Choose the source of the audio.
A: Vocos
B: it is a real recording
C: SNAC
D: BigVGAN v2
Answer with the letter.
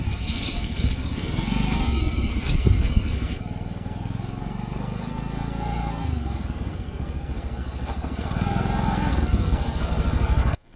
C